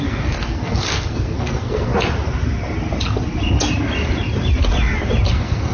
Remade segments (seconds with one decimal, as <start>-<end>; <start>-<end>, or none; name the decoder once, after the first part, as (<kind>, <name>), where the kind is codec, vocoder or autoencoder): 0.0-1.9 (codec, SNAC); 5.3-5.7